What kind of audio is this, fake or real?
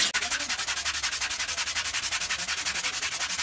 real